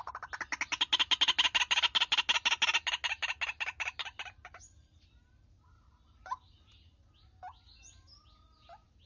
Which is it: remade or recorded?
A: recorded